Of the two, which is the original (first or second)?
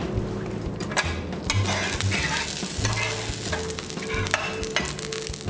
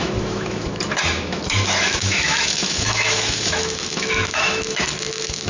first